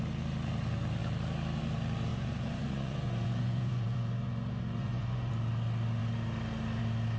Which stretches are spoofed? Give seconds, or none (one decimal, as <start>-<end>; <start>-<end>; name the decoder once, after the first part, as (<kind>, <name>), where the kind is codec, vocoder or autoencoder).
2.1-5.3 (vocoder, Vocos)